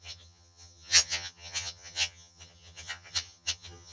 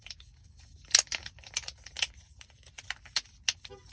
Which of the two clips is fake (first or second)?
first